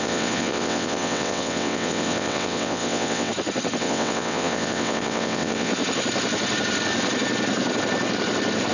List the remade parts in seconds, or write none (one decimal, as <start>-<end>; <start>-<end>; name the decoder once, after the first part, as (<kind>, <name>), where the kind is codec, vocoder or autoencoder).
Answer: 0.0-3.3 (vocoder, WaveNeXt); 3.8-5.7